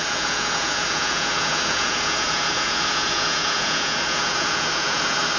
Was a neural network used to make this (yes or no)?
yes